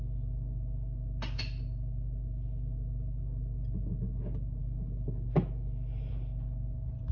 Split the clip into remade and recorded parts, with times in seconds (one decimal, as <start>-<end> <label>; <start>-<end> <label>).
0.0-4.6 recorded; 4.6-6.1 remade; 6.1-7.1 recorded